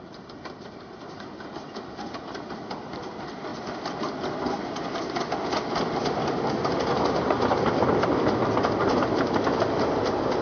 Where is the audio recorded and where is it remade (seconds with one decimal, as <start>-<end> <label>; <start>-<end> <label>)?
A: 0.0-10.4 recorded